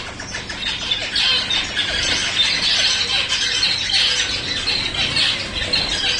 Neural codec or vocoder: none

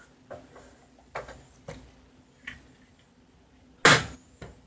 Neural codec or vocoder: none